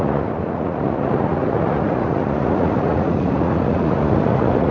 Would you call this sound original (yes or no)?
no